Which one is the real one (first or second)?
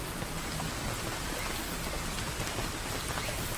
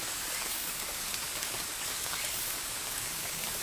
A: first